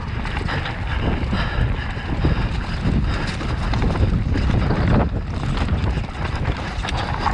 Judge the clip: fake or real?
real